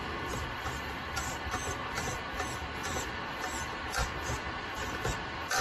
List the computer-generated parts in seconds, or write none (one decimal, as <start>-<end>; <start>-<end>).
2.8-5.6